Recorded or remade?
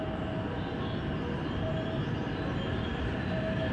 recorded